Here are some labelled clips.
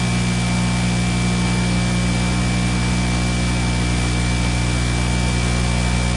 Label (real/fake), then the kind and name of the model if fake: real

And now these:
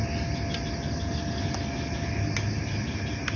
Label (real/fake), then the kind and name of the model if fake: real